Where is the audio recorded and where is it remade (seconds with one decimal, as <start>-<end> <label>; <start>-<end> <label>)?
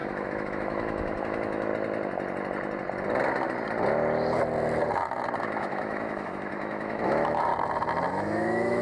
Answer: 0.0-1.7 remade; 1.7-5.4 recorded; 5.4-7.5 remade; 7.5-8.1 recorded; 8.1-8.8 remade